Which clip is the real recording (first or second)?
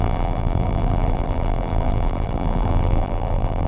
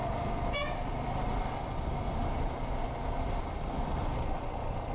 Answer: second